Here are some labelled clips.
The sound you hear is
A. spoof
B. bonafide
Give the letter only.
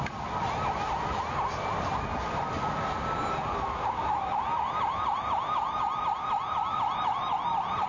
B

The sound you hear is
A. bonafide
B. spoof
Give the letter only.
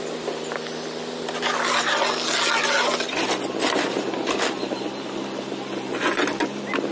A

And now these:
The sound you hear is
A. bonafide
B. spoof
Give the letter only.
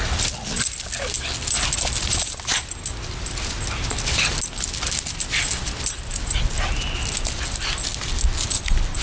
A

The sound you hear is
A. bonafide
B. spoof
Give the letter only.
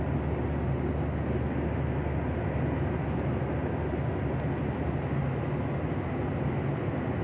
A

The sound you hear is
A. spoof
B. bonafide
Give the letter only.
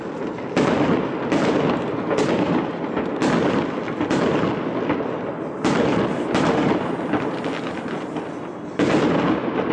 B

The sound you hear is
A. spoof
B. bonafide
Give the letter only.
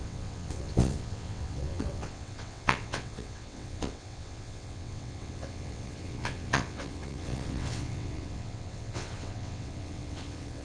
A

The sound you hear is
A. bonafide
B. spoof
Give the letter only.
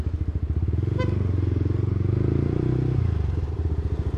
A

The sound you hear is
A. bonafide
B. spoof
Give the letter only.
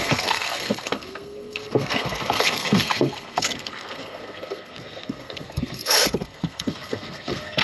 B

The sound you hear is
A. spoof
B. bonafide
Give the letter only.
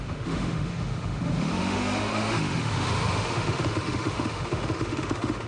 A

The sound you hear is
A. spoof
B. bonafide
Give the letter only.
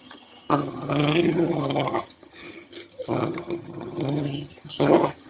A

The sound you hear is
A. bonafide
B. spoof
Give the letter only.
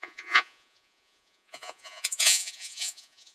B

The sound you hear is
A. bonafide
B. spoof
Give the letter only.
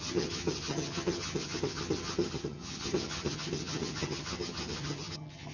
B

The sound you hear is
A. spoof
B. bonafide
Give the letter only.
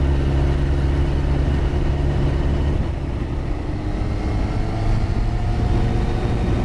B